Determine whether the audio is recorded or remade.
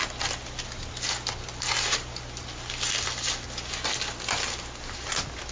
recorded